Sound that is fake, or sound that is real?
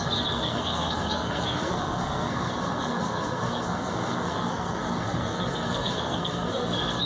fake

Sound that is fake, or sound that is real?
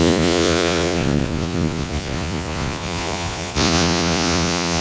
fake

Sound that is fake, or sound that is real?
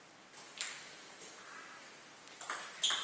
real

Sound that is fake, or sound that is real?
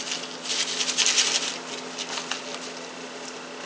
real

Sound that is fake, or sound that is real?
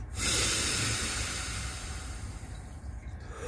fake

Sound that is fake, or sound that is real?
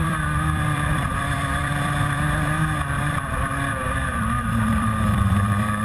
fake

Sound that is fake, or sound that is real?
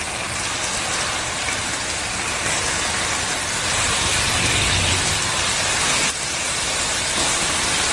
fake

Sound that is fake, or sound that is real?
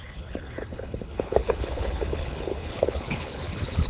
fake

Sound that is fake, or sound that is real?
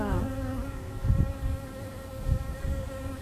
fake